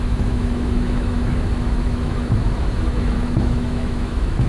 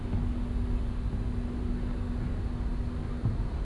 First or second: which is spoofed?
first